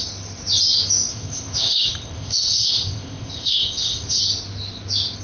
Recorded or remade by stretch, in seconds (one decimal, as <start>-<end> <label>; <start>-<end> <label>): 0.0-1.1 recorded; 1.1-4.2 remade; 4.2-5.2 recorded